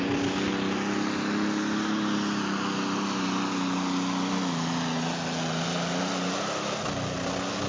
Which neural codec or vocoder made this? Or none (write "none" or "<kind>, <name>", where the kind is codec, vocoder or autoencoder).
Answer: none